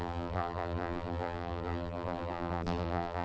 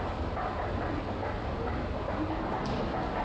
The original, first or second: second